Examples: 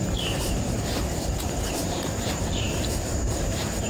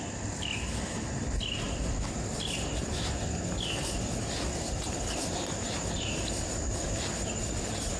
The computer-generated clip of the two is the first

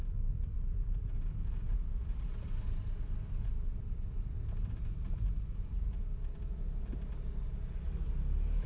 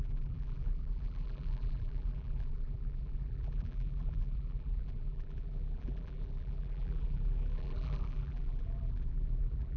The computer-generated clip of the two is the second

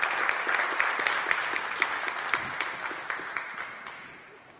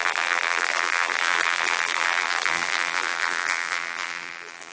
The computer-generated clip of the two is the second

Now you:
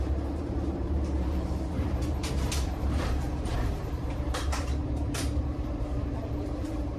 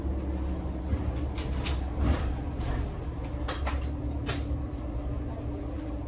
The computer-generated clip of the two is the first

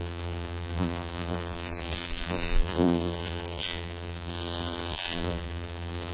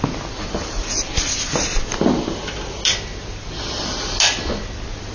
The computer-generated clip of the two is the first